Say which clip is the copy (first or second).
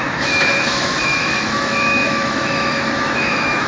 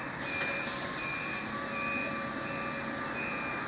first